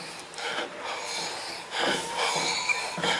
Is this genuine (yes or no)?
yes